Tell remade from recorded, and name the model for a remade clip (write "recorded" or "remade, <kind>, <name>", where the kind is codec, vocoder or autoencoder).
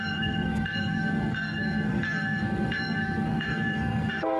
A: remade, codec, SNAC